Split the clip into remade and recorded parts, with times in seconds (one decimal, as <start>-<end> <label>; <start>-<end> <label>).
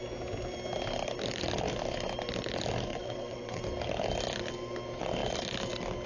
0.0-2.9 recorded; 2.9-3.6 remade; 3.6-6.1 recorded